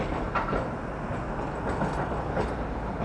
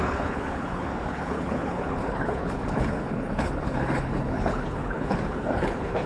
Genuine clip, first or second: first